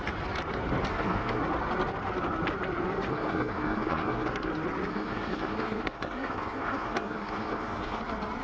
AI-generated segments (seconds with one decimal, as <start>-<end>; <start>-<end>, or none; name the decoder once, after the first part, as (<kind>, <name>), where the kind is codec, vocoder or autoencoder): 0.9-1.4 (codec, SNAC); 3.1-4.5; 4.9-8.0